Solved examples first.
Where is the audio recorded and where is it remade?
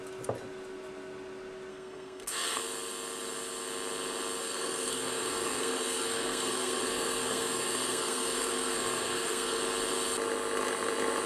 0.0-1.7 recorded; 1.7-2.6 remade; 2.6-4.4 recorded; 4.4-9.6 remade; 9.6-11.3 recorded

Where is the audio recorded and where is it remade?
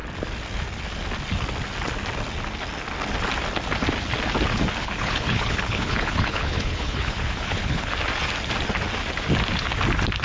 0.0-4.8 recorded; 4.8-7.9 remade; 7.9-10.2 recorded